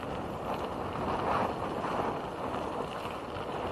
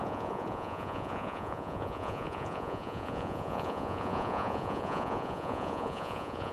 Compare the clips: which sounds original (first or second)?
first